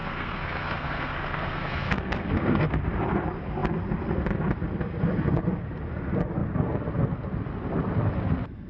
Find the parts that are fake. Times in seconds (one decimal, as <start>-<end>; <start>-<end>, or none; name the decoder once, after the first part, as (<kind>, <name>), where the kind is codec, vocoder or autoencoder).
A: 0.0-2.7 (codec, SNAC)

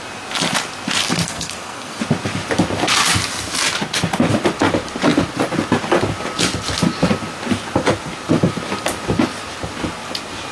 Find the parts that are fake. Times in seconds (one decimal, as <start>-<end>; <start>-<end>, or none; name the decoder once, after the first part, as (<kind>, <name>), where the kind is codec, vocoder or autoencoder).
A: 1.0-2.0 (codec, SNAC)

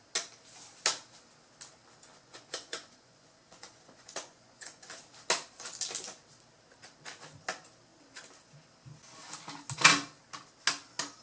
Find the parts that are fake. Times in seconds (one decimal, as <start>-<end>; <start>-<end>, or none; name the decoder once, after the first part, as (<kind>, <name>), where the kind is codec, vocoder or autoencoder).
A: 2.1-4.9 (vocoder, Vocos)

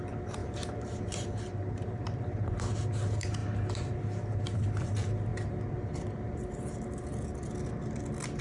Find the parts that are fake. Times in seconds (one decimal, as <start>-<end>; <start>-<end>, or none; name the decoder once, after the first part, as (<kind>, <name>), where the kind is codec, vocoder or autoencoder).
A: 0.4-2.5 (vocoder, BigVGAN v2)

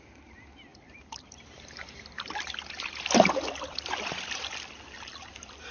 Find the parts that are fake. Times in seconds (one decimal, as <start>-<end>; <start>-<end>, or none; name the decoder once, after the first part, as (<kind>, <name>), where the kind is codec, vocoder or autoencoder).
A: 0.7-4.1 (vocoder, BigVGAN v2)